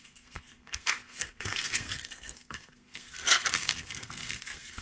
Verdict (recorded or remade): remade